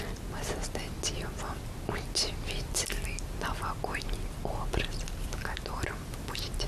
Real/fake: real